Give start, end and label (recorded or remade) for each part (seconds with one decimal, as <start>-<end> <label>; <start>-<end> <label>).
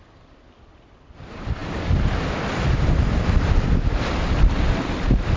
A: 0.0-5.4 recorded